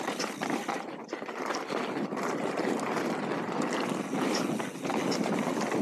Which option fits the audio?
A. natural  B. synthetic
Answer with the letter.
A